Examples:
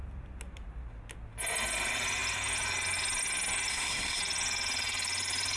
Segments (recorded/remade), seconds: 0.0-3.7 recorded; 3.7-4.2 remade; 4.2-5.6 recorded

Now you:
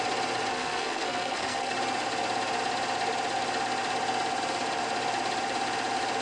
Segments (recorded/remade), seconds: 0.0-0.5 recorded; 0.5-1.7 remade; 1.7-6.2 recorded

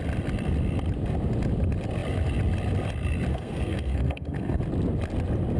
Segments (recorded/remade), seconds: 0.0-3.3 recorded; 3.3-4.6 remade; 4.6-5.6 recorded

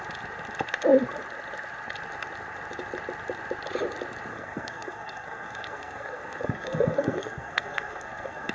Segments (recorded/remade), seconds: 0.0-4.3 recorded; 4.3-8.5 remade

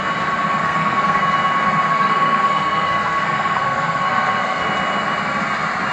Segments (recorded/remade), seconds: 0.0-0.6 recorded; 0.6-1.2 remade; 1.2-1.9 recorded; 1.9-4.6 remade; 4.6-5.9 recorded

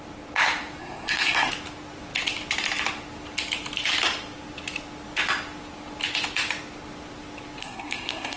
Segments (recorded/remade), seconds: 0.0-0.8 recorded; 0.8-1.5 remade; 1.5-7.6 recorded; 7.6-8.4 remade